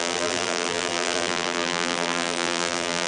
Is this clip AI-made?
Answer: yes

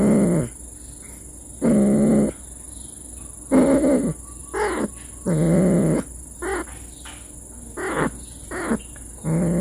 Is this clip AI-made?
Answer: no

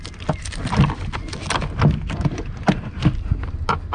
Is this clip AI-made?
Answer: no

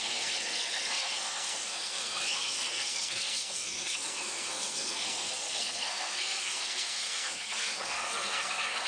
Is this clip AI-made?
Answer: yes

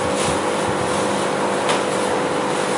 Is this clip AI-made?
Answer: no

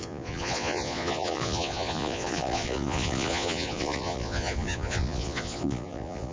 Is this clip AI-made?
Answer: yes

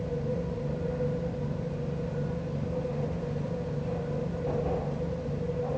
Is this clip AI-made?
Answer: no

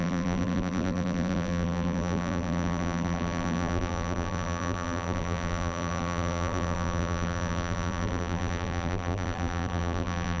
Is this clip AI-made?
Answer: yes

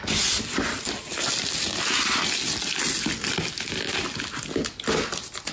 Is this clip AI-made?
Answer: no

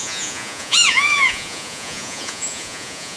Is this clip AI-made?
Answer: yes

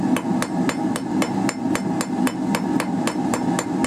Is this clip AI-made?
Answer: no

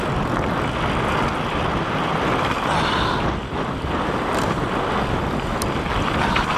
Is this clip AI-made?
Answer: no